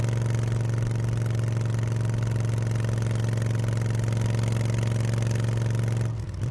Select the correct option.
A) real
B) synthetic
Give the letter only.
A